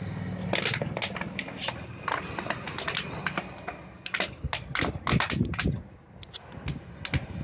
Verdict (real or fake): real